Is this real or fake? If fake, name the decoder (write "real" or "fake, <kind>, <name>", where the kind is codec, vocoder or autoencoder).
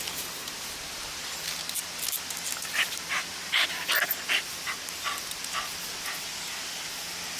real